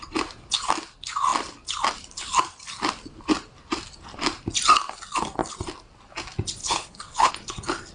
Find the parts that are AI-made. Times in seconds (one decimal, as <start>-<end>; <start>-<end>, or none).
6.6-7.3